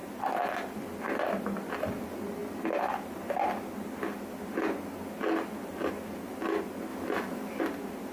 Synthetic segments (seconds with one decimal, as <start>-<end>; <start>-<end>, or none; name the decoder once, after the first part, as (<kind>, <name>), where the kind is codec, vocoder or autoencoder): 6.9-7.6 (vocoder, BigVGAN v2)